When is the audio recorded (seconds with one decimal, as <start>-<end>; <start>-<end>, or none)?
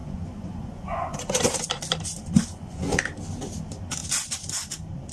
1.4-2.5; 3.0-5.1